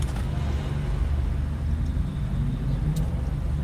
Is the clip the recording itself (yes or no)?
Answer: yes